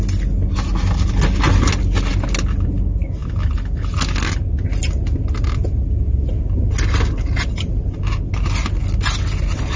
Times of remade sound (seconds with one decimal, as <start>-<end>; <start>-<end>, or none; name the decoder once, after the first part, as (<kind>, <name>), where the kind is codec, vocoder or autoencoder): none